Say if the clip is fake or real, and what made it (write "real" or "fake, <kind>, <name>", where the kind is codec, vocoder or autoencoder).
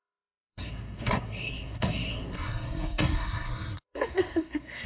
fake, codec, SNAC